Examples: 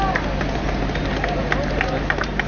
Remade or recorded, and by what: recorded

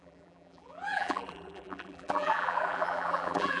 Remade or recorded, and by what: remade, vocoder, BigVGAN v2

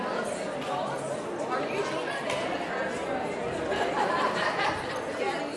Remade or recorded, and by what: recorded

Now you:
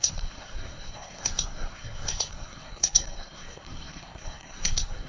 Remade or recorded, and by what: remade, codec, SNAC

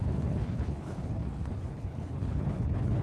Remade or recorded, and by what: remade, codec, HILCodec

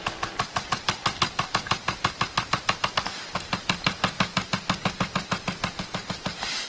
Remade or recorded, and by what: recorded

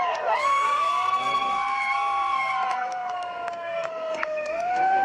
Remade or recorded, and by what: remade, codec, SNAC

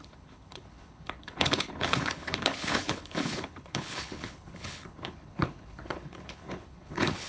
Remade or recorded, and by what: remade, codec, HILCodec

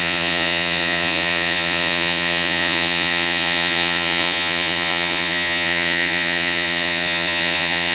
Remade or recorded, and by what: remade, vocoder, Vocos